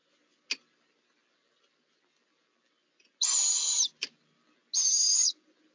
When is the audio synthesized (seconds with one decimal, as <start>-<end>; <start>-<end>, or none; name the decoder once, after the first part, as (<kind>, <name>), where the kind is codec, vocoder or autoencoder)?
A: none

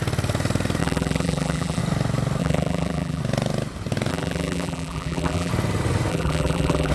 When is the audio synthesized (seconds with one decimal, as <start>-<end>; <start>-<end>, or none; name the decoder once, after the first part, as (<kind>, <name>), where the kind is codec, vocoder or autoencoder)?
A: 0.8-1.8 (vocoder, BigVGAN v2); 2.4-3.2; 4.1-5.5; 6.1-6.9

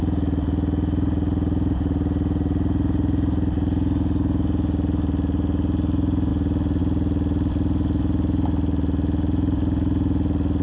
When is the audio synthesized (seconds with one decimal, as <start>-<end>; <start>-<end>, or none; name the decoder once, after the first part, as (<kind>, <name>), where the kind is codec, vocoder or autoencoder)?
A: none